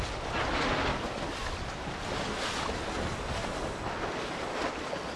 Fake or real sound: real